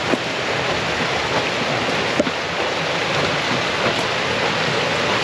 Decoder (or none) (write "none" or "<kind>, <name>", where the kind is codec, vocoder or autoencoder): none